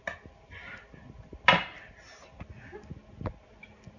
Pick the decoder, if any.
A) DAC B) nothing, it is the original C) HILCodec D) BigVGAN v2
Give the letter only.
B